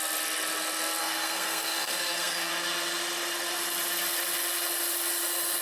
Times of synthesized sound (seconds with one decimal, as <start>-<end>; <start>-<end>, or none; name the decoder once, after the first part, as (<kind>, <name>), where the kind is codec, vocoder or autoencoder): 1.0-2.5 (codec, SNAC)